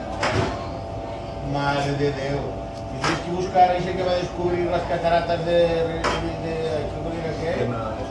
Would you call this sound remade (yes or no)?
no